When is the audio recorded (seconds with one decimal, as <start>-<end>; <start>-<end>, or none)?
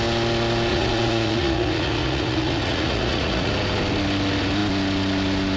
0.0-0.7; 3.5-5.6